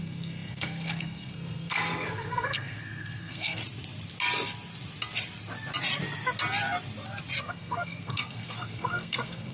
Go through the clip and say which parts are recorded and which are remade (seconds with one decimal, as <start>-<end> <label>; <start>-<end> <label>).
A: 0.0-3.6 remade; 3.6-7.4 recorded; 7.4-9.5 remade